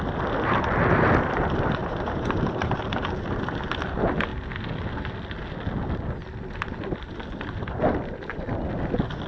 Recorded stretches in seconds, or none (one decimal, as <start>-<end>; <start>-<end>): 0.0-1.8; 2.8-9.3